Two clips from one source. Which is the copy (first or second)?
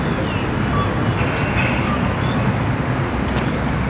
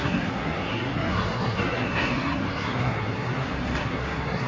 second